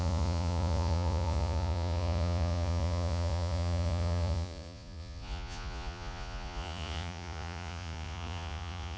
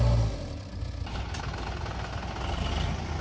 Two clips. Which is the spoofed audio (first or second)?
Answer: first